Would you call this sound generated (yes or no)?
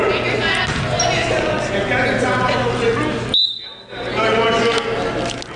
no